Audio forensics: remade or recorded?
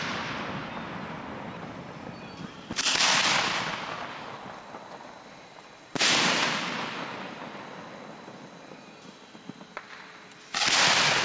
remade